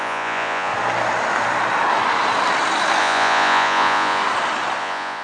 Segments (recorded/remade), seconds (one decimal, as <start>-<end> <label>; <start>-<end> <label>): 0.0-0.7 remade; 0.7-3.0 recorded; 3.0-4.2 remade; 4.2-4.8 recorded; 4.8-5.2 remade